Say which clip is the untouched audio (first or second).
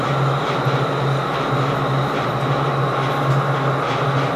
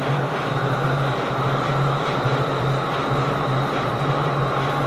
first